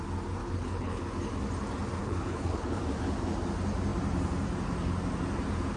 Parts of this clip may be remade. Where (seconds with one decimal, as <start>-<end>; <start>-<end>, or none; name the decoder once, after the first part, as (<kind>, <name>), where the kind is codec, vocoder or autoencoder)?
0.4-1.1 (codec, HILCodec); 2.0-2.8